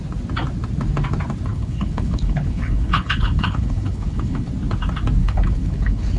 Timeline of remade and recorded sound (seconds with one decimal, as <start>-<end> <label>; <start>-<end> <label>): 0.0-1.5 recorded; 1.5-4.5 remade; 4.5-5.2 recorded; 5.2-6.2 remade